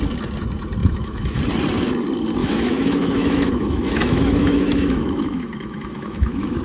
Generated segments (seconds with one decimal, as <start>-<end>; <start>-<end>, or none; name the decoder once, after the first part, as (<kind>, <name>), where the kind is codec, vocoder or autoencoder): 0.8-1.4 (autoencoder, DAC-VAE); 2.4-6.6